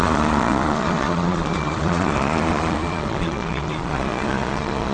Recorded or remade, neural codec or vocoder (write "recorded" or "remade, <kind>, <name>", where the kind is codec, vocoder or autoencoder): remade, vocoder, Vocos